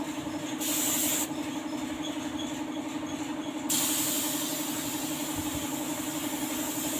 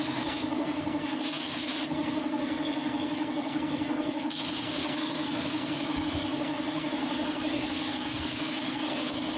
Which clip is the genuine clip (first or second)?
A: first